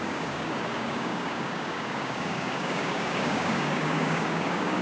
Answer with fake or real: fake